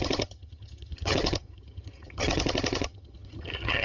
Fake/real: fake